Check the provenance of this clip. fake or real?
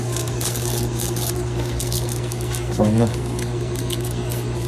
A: fake